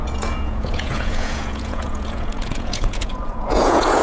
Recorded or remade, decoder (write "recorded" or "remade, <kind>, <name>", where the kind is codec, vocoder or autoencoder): remade, vocoder, Vocos